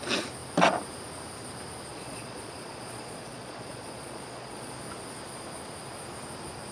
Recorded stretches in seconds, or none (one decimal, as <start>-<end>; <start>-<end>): 0.0-1.9; 4.7-6.7